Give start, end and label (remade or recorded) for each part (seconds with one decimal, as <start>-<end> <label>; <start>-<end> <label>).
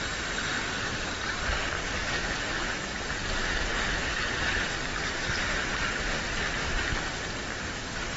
0.0-8.2 recorded